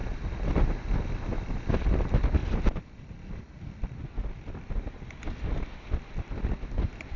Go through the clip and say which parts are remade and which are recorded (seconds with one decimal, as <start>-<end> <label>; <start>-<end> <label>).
0.0-7.2 recorded